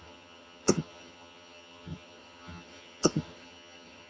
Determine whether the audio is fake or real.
fake